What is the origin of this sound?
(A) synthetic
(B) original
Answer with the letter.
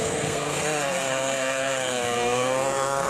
A